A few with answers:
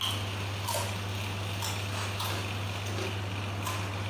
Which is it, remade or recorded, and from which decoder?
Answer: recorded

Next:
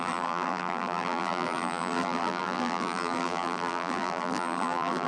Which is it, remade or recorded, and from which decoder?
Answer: remade, vocoder, BigVGAN v2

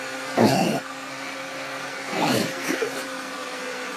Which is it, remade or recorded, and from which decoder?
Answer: remade, codec, SNAC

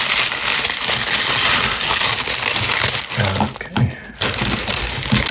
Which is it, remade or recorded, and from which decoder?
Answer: recorded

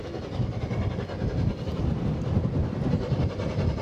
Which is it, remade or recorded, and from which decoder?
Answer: recorded